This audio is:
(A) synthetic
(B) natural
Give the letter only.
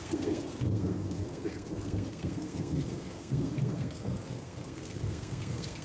A